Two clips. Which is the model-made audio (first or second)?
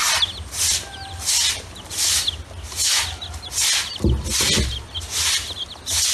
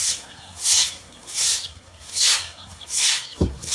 second